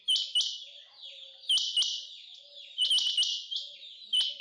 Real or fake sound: real